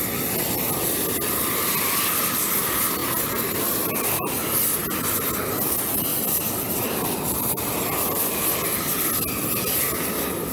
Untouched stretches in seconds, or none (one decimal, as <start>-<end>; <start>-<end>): 0.0-6.1; 8.9-10.5